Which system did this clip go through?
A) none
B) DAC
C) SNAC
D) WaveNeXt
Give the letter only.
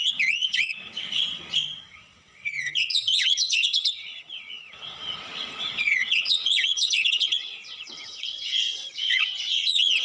D